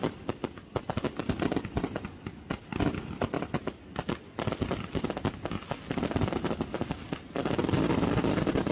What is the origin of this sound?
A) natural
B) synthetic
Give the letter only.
A